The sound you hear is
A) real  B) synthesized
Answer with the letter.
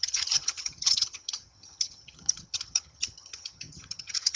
B